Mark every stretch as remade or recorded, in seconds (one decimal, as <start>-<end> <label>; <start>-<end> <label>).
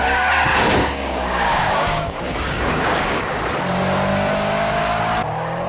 0.0-0.5 recorded; 0.5-3.4 remade; 3.4-4.1 recorded; 4.1-5.0 remade; 5.0-5.7 recorded